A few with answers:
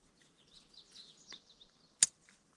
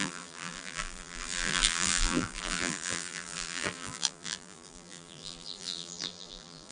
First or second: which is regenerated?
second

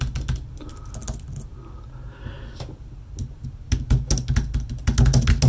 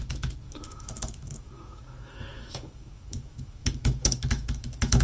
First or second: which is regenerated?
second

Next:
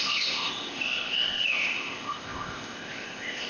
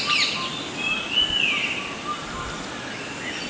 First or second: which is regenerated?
first